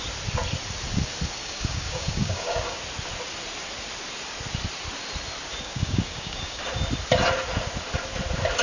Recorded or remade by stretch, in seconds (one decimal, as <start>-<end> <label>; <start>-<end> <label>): 0.0-1.4 recorded; 1.4-2.8 remade; 2.8-5.6 recorded; 5.6-6.6 remade; 6.6-8.6 recorded